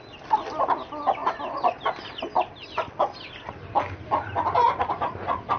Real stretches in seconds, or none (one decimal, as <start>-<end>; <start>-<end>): 0.0-1.2; 4.6-5.6